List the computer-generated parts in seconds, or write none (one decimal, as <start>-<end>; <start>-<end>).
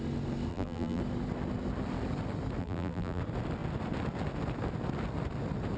0.5-1.0; 2.6-3.2